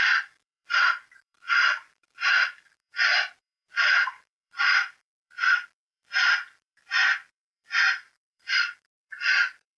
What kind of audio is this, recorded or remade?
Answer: remade